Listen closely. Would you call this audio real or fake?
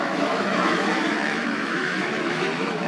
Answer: fake